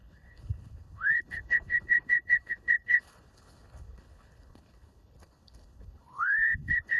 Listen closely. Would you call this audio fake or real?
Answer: fake